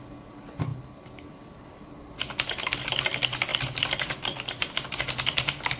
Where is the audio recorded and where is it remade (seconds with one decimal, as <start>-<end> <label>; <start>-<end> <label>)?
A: 0.0-0.7 recorded; 0.7-1.9 remade; 1.9-3.5 recorded; 3.5-5.8 remade